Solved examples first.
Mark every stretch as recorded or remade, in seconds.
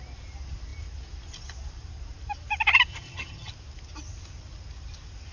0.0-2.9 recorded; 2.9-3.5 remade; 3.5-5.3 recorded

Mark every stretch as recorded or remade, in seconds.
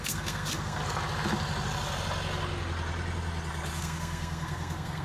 0.0-0.8 remade; 0.8-3.8 recorded; 3.8-5.0 remade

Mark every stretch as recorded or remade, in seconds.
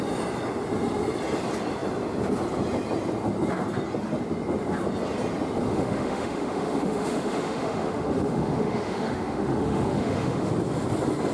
0.0-5.7 recorded; 5.7-10.5 remade; 10.5-11.3 recorded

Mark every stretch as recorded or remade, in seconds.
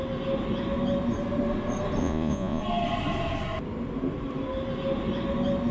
0.0-2.0 recorded; 2.0-2.6 remade; 2.6-5.7 recorded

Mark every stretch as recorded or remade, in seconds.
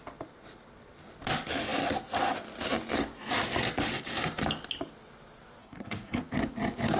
0.0-5.6 recorded; 5.6-6.2 remade; 6.2-7.0 recorded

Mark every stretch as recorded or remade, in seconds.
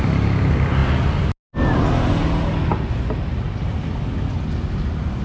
0.0-5.2 recorded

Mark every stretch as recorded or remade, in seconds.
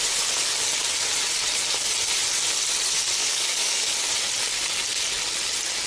0.0-3.2 recorded; 3.2-3.9 remade; 3.9-5.9 recorded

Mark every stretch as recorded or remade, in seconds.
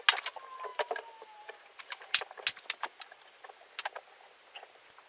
0.0-0.7 recorded; 0.7-2.2 remade; 2.2-5.1 recorded